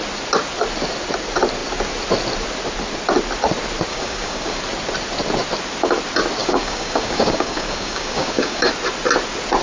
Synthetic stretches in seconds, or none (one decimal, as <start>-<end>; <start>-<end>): 3.9-4.6; 6.4-8.7

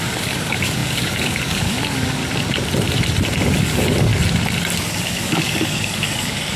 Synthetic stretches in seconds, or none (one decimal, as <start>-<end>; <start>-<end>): 0.0-2.2; 3.6-4.1; 5.0-6.6

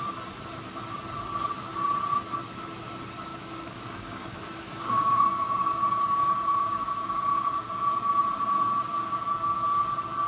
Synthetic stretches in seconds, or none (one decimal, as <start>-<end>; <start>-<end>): 3.3-8.2; 8.9-9.8

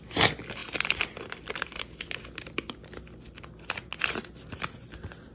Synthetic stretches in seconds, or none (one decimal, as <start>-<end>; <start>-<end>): none